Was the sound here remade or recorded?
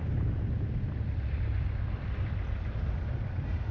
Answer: recorded